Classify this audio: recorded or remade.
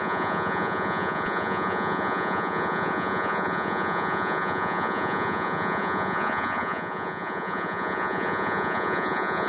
remade